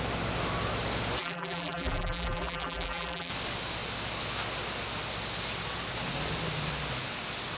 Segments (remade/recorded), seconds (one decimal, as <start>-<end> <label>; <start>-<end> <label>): 0.0-1.2 recorded; 1.2-3.3 remade; 3.3-7.6 recorded